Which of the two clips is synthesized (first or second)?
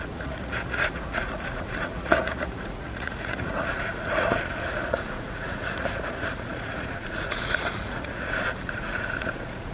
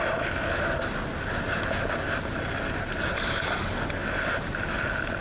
first